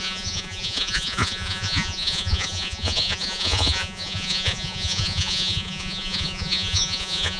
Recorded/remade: remade